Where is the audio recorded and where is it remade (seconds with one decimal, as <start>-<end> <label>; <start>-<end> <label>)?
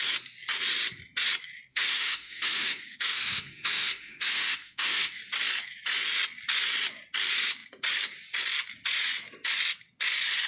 0.0-1.7 recorded; 1.7-5.2 remade; 5.2-10.5 recorded